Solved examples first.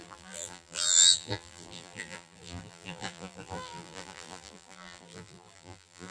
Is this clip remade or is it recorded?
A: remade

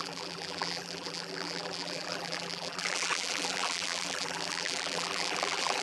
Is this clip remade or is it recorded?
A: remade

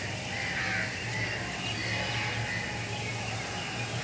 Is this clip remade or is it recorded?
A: recorded